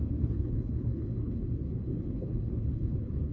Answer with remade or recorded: remade